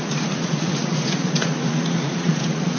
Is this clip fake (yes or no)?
yes